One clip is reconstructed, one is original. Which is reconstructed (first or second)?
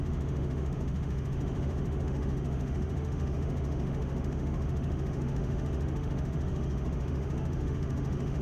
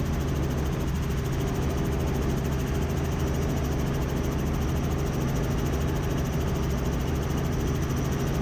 first